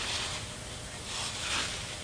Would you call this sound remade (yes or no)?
no